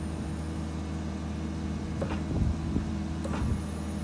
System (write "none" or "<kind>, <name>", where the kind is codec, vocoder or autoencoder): none